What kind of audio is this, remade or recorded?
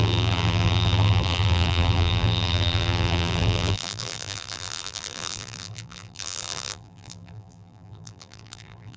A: remade